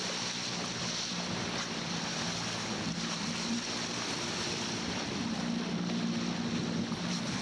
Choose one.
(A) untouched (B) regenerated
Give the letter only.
A